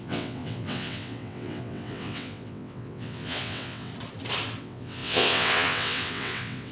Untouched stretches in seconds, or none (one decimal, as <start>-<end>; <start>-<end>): 3.9-4.6